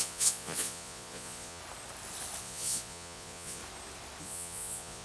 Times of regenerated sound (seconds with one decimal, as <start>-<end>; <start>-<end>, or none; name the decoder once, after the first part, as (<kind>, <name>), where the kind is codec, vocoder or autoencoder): 0.0-1.6 (vocoder, Vocos); 2.4-3.6; 4.2-5.0